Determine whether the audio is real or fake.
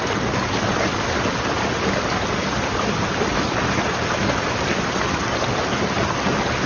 real